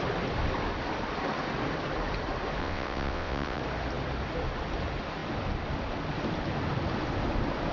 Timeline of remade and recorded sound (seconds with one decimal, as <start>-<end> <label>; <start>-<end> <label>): 0.0-2.6 recorded; 2.6-3.6 remade; 3.6-7.7 recorded